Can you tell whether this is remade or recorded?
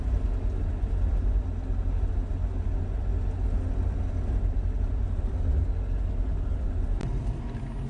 recorded